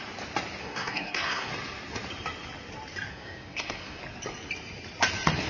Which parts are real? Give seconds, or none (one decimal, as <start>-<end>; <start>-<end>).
0.0-0.6; 1.5-3.1; 4.0-5.5